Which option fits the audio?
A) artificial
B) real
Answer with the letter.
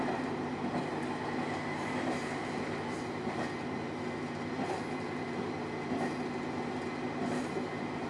B